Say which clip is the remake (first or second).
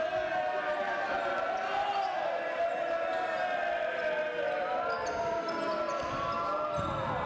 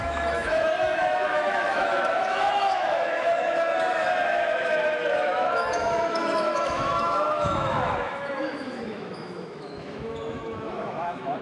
second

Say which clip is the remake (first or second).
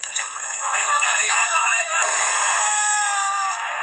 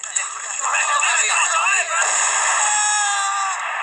first